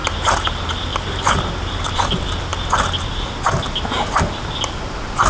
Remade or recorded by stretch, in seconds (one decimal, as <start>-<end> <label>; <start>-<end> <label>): 0.0-5.3 recorded